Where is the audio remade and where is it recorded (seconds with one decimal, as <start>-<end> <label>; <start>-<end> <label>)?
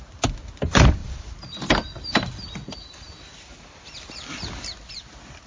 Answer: 0.0-5.5 recorded